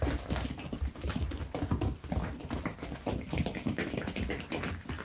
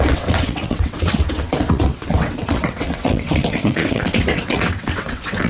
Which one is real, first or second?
first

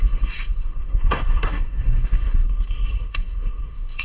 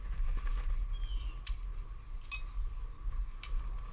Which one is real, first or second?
second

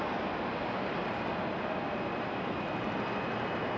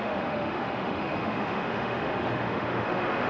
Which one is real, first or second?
first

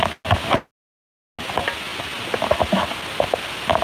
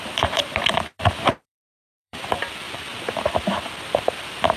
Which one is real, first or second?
first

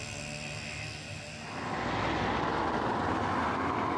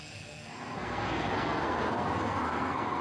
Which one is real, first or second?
first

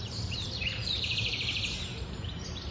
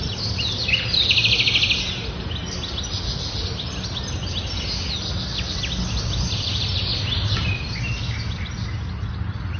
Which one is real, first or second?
second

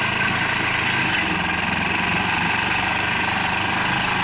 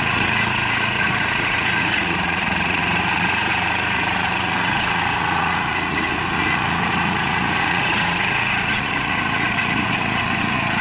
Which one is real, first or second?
first